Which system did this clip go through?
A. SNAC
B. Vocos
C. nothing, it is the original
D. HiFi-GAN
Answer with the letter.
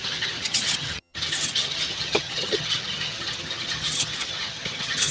D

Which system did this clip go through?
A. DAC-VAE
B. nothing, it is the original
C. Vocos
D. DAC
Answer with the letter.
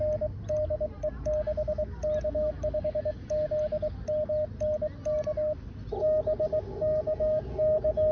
B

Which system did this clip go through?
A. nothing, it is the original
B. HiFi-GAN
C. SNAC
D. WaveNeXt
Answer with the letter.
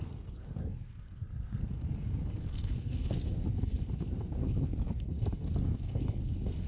C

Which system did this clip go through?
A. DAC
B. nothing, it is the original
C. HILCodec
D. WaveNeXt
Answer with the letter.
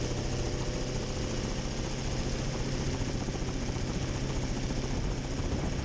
B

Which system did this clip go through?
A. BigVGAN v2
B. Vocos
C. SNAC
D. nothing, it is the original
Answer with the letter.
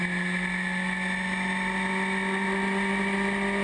D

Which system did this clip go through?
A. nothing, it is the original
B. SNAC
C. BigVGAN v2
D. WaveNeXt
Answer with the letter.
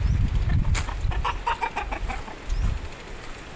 A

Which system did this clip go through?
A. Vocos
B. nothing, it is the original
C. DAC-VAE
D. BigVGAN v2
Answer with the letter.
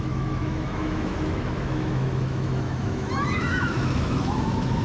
C